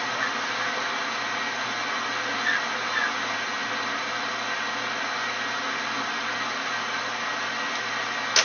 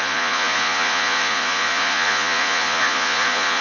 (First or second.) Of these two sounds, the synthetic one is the second